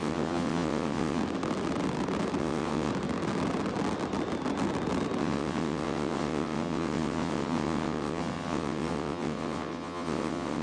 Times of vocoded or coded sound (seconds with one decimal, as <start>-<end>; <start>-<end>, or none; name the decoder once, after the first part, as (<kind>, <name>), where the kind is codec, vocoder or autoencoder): 0.0-1.2 (vocoder, WaveNeXt); 2.4-2.9; 5.2-10.6